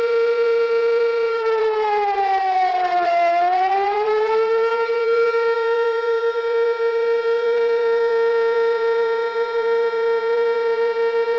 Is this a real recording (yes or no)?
no